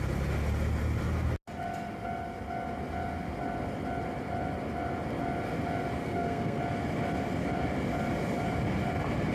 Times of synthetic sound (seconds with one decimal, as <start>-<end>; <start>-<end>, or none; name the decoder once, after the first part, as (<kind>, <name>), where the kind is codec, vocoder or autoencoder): 6.0-6.6 (codec, SNAC)